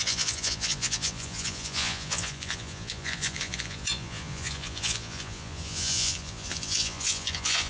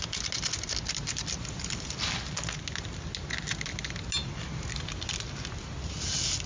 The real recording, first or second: second